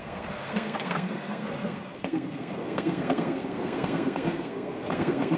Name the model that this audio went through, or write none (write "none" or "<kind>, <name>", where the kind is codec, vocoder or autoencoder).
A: codec, SNAC